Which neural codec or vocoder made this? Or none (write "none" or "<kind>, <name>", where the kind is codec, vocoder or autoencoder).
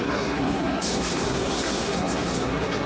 codec, SNAC